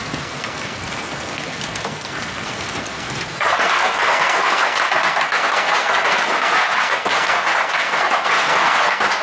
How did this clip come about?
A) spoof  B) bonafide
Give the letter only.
A